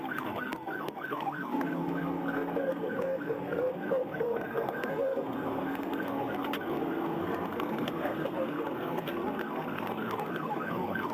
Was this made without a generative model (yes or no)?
no